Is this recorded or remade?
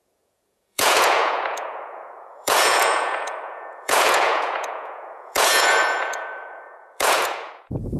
remade